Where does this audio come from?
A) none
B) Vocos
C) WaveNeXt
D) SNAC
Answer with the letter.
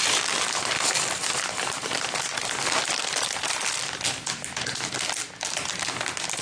A